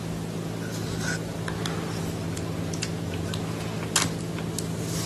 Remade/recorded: recorded